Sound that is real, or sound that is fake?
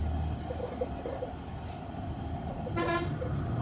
real